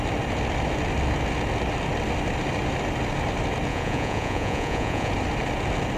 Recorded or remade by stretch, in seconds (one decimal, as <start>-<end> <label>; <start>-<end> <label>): 0.0-3.7 recorded; 3.7-5.1 remade; 5.1-6.0 recorded